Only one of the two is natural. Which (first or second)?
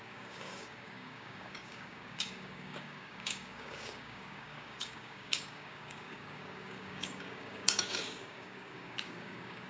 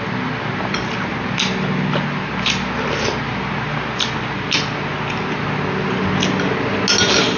second